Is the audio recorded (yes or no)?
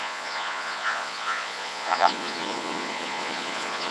no